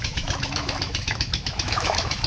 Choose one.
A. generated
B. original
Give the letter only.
A